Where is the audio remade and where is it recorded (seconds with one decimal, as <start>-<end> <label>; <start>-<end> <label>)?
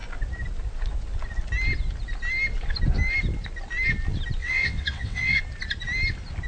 0.0-4.4 recorded; 4.4-5.4 remade; 5.4-6.5 recorded